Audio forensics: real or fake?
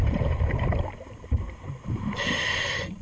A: fake